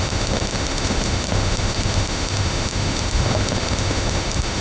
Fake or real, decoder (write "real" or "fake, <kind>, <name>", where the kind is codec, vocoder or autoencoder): fake, autoencoder, DAC-VAE